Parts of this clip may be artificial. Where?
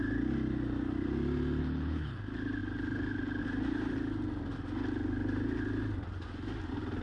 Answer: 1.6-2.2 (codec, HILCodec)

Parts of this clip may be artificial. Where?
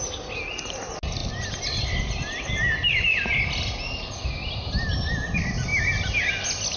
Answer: none